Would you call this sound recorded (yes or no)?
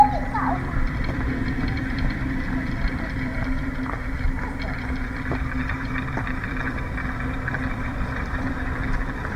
no